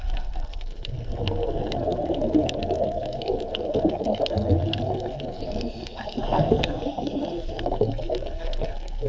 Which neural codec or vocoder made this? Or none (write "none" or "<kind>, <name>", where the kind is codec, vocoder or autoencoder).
codec, SNAC